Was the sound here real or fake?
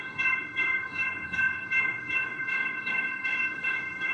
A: fake